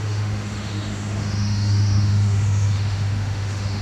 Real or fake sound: fake